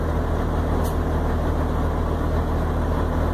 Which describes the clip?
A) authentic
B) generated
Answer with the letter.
A